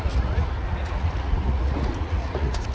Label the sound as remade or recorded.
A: remade